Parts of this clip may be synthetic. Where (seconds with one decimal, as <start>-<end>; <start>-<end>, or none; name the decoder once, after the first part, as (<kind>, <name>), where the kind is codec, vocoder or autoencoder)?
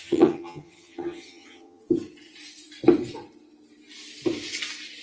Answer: 0.0-1.8 (vocoder, HiFi-GAN)